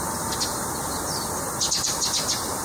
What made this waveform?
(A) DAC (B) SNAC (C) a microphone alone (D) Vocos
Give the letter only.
C